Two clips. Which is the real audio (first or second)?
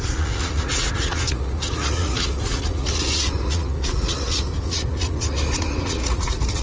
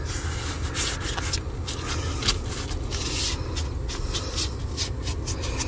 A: second